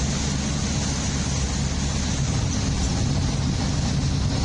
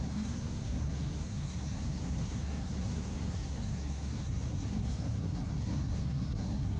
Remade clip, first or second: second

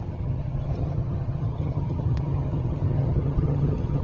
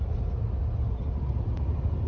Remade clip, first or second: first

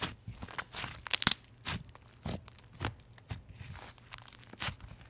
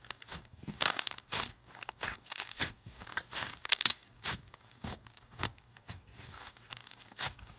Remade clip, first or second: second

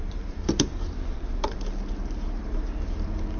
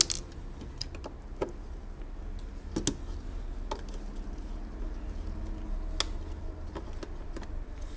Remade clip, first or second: first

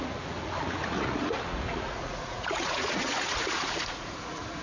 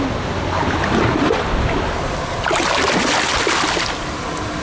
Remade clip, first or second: first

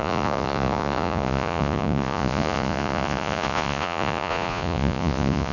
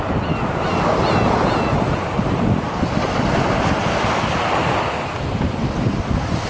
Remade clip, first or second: first